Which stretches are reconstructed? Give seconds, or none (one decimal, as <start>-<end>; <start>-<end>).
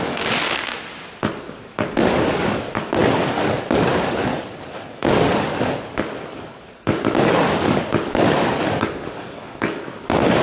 0.0-0.7; 1.5-10.4